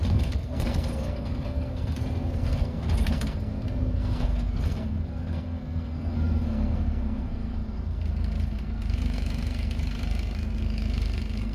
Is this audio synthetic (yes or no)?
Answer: yes